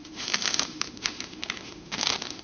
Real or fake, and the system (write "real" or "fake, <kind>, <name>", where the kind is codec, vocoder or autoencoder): fake, autoencoder, DAC-VAE